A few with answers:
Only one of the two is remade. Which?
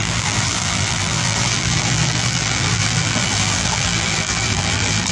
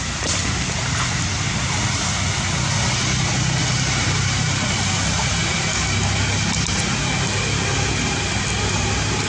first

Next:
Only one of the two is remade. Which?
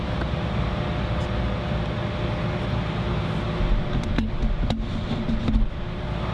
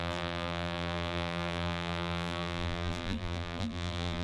second